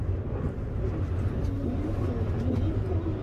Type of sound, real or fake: real